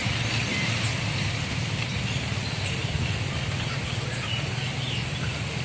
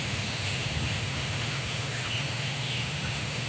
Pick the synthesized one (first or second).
second